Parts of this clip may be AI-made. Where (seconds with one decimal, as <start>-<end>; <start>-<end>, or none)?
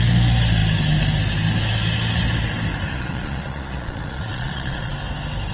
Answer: 2.9-4.9